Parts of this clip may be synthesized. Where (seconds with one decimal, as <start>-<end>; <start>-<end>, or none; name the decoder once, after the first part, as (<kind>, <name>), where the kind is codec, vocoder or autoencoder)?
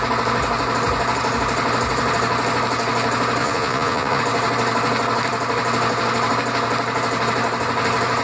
3.4-4.2 (vocoder, Vocos)